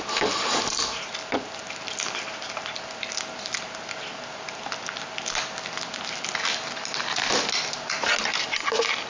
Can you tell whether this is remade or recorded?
recorded